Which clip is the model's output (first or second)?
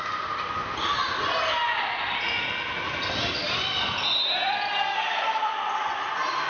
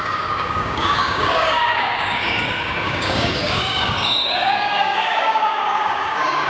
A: second